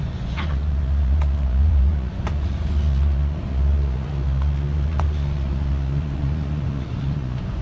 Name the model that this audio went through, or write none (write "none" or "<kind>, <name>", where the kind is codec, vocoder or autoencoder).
vocoder, Vocos